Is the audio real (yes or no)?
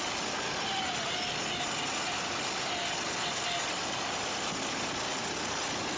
yes